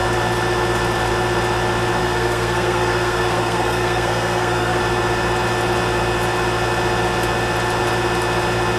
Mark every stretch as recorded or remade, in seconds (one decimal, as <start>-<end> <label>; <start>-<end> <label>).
0.0-2.0 recorded; 2.0-4.8 remade; 4.8-8.8 recorded